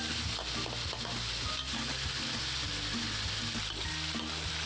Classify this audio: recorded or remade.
recorded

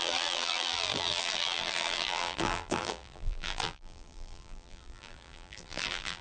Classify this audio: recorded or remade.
remade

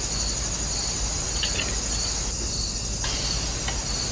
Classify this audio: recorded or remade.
recorded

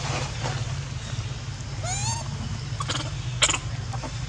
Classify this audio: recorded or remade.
recorded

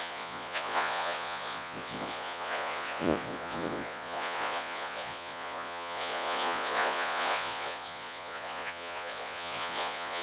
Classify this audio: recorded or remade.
remade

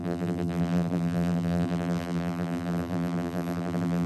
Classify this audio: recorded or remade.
remade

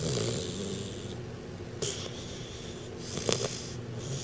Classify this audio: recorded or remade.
recorded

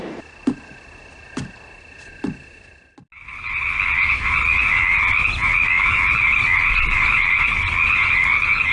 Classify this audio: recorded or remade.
recorded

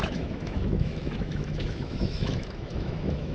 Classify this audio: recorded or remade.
remade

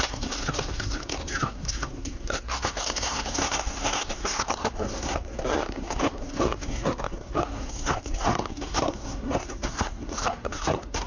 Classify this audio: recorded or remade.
remade